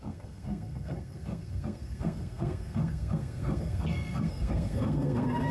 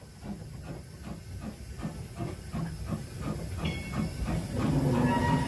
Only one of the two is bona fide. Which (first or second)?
second